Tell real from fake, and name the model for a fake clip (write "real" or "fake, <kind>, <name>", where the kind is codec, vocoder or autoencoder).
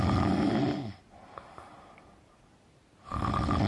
fake, vocoder, BigVGAN v2